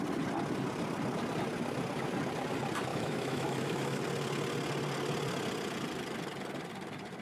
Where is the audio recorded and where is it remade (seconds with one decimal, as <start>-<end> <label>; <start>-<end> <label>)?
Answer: 0.0-2.9 recorded; 2.9-4.0 remade; 4.0-7.2 recorded